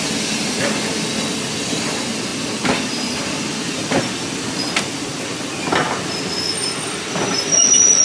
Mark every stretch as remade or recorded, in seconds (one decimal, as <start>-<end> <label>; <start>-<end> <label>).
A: 0.0-8.0 recorded